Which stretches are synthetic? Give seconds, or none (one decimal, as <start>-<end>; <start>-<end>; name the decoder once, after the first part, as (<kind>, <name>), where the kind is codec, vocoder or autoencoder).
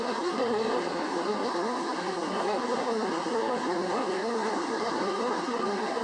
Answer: 0.0-6.0 (codec, SNAC)